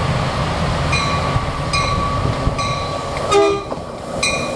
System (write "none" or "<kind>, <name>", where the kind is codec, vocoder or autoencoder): none